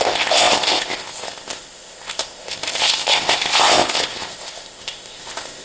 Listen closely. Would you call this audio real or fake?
fake